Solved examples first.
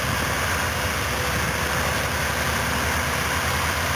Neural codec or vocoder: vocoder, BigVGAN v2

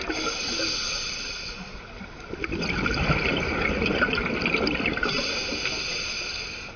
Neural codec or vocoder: none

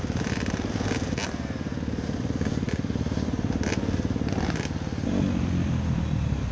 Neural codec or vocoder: none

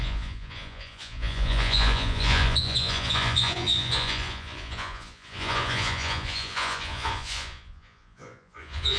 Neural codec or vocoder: vocoder, Vocos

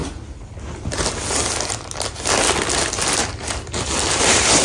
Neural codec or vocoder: none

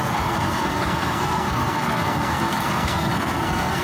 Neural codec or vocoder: codec, SNAC